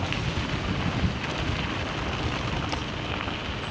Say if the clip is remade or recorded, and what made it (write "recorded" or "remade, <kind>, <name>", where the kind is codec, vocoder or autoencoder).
recorded